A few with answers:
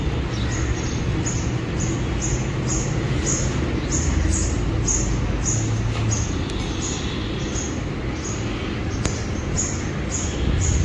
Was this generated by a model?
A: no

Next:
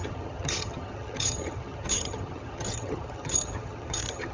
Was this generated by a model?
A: yes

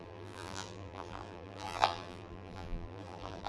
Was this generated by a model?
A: yes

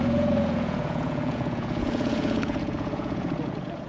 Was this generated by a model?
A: yes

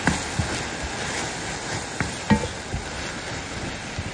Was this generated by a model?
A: no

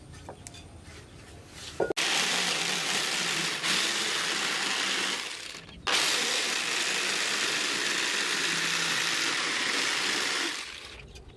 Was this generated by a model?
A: no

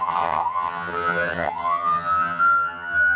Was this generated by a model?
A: yes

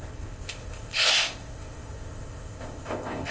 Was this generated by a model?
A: yes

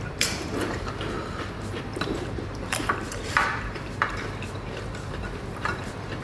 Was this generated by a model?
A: yes